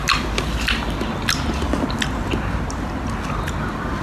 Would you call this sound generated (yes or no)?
no